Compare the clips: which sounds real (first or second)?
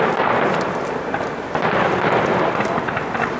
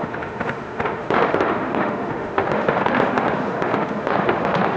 first